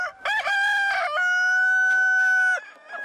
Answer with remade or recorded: recorded